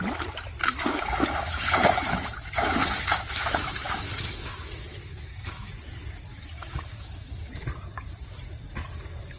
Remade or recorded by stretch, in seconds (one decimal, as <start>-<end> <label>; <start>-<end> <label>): 0.0-0.7 recorded; 0.7-5.7 remade; 5.7-6.3 recorded; 6.3-7.5 remade; 7.5-9.4 recorded